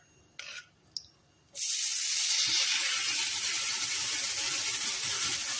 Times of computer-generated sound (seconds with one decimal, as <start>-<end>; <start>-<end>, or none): none